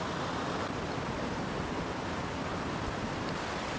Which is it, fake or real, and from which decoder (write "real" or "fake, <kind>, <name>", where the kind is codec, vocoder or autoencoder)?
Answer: real